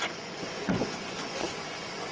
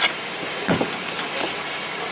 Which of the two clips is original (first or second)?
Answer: second